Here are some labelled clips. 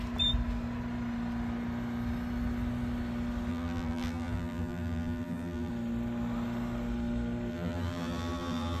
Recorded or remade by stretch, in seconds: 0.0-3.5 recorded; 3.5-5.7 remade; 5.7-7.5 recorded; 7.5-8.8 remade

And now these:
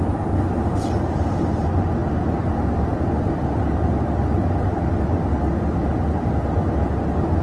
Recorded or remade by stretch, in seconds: 0.0-7.4 recorded

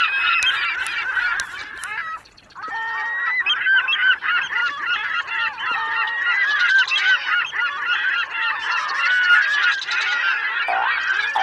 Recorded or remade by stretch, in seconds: 0.0-11.4 recorded

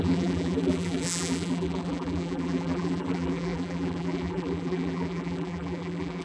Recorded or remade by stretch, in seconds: 0.0-6.2 remade

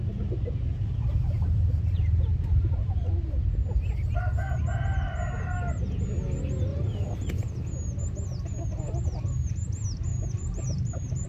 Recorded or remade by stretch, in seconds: 0.0-0.7 recorded; 0.7-3.1 remade; 3.1-6.7 recorded; 6.7-7.6 remade; 7.6-10.1 recorded; 10.1-11.3 remade

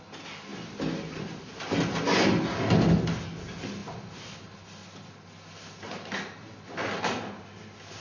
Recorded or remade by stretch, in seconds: 0.0-0.5 recorded; 0.5-1.2 remade; 1.2-8.0 recorded